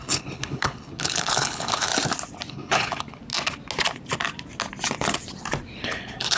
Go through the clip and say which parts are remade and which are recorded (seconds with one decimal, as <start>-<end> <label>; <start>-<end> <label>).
0.0-1.9 remade; 1.9-2.5 recorded; 2.5-3.2 remade; 3.2-5.8 recorded; 5.8-6.4 remade